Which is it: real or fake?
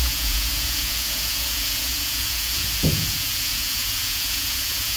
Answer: fake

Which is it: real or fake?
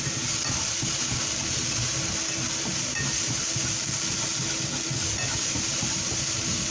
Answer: real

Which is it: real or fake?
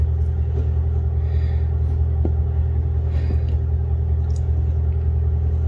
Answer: real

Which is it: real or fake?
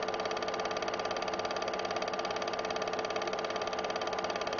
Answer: real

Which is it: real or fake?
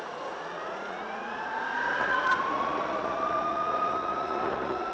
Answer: fake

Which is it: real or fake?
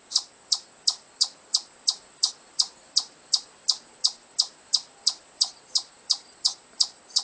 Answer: fake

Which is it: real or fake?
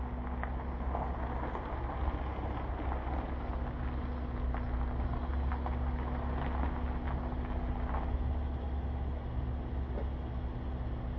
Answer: real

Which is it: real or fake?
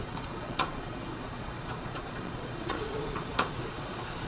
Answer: fake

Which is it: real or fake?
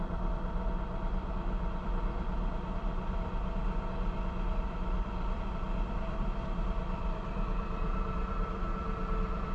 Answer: fake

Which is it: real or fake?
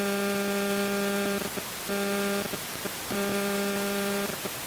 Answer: fake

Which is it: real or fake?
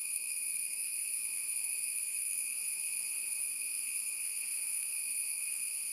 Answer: fake